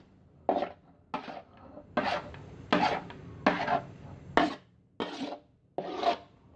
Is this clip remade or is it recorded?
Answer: recorded